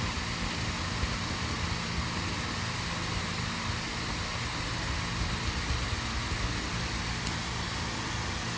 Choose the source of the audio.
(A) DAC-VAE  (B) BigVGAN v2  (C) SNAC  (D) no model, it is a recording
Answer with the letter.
D